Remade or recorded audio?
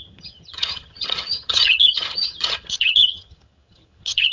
remade